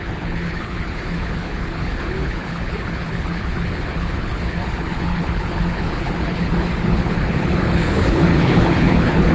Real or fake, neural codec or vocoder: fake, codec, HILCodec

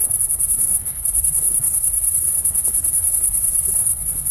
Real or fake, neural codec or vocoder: fake, codec, HILCodec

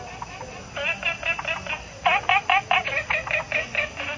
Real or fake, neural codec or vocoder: real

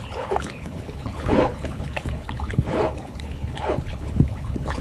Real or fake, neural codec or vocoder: fake, codec, HILCodec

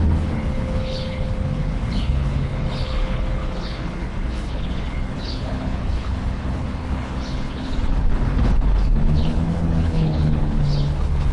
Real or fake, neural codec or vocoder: fake, codec, HILCodec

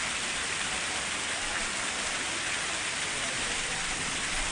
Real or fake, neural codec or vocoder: real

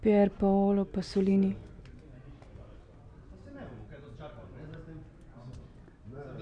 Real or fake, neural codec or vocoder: real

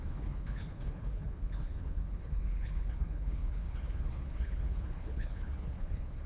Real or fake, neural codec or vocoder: fake, codec, HILCodec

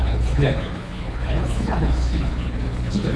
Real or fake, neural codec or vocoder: fake, codec, HILCodec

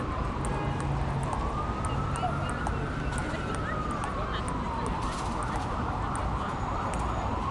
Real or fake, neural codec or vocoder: real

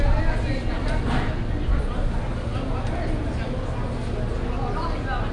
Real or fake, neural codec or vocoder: real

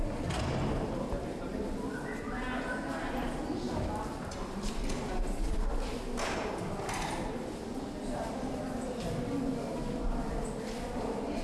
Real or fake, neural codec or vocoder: real